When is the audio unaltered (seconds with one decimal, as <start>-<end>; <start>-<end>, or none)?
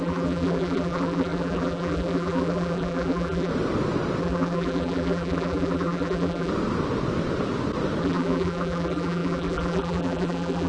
3.5-4.2; 6.5-8.0